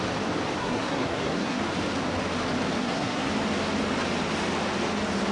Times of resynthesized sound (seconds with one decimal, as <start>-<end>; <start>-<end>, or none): 0.6-1.6; 2.8-3.3